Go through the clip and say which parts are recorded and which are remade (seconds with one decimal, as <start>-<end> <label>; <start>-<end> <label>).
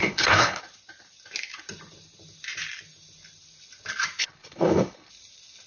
0.0-0.6 remade; 0.6-4.2 recorded; 4.2-5.1 remade; 5.1-5.7 recorded